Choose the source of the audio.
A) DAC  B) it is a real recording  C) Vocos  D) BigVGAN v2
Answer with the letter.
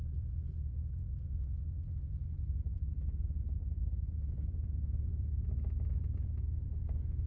D